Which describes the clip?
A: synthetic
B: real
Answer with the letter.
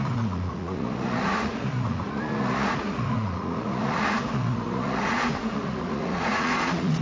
A